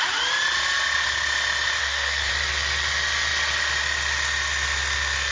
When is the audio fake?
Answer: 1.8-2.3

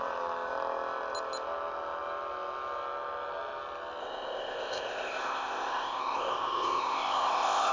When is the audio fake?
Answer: 4.0-7.7

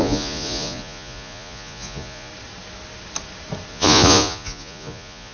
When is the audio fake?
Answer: 0.0-2.3; 3.7-5.3